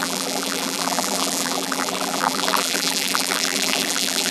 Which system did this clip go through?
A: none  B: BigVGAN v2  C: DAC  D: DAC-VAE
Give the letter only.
B